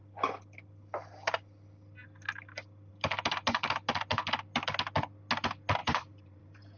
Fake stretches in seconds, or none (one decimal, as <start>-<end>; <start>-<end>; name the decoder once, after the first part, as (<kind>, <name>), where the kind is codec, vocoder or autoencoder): 5.8-6.8 (vocoder, BigVGAN v2)